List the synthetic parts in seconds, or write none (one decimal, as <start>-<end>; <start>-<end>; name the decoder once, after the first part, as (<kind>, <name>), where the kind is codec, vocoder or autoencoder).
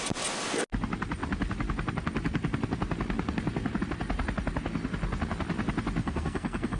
6.0-6.8 (codec, SNAC)